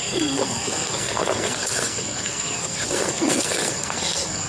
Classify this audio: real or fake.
fake